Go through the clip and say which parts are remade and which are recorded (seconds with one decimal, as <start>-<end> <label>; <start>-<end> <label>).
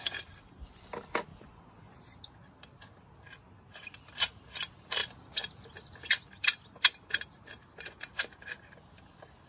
0.0-1.3 recorded; 1.3-2.0 remade; 2.0-9.5 recorded